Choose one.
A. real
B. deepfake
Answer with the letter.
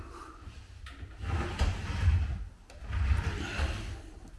A